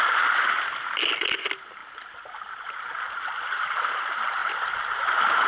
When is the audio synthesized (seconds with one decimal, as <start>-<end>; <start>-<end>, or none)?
none